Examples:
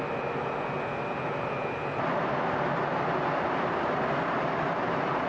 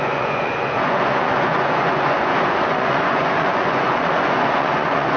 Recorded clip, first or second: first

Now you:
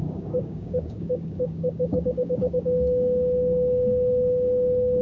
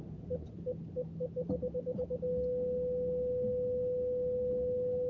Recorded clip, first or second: second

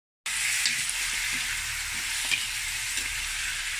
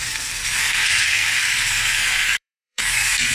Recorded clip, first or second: first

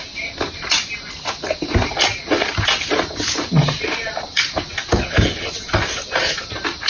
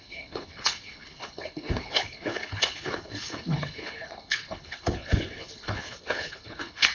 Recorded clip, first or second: first